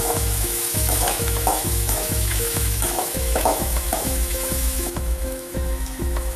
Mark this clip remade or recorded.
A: remade